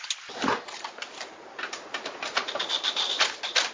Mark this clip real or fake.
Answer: real